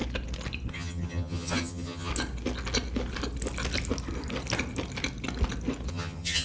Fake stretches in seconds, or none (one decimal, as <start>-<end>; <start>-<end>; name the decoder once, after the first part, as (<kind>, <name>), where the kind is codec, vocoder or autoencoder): 0.7-2.1 (vocoder, HiFi-GAN); 5.9-6.4